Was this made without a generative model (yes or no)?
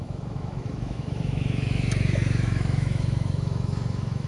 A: no